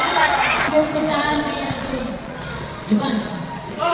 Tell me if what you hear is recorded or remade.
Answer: remade